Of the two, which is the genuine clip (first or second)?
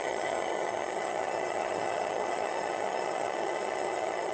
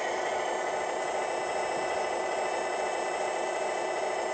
second